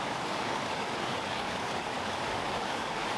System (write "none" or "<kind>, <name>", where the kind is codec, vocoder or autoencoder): codec, DAC